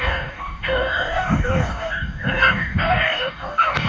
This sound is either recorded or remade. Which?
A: remade